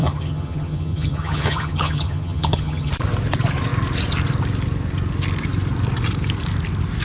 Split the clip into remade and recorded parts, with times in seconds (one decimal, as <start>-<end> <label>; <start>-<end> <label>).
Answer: 0.0-2.9 remade; 2.9-7.0 recorded